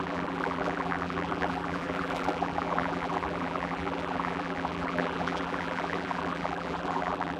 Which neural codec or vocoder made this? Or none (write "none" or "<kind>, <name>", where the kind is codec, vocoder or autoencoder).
vocoder, BigVGAN v2